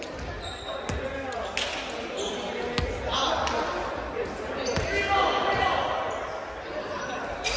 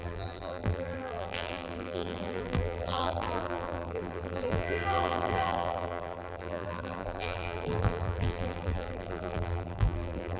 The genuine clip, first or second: first